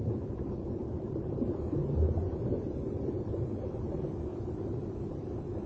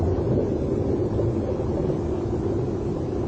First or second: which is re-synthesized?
first